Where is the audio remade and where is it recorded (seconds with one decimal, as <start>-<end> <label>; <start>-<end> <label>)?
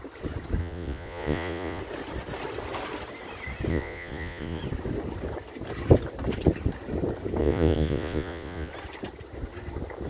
0.0-0.6 recorded; 0.6-1.8 remade; 1.8-3.7 recorded; 3.7-4.6 remade; 4.6-7.4 recorded; 7.4-8.7 remade; 8.7-10.1 recorded